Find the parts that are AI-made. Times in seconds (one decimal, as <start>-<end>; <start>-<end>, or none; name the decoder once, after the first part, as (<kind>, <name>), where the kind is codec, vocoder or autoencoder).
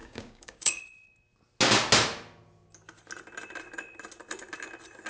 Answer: 0.0-0.8 (codec, DAC)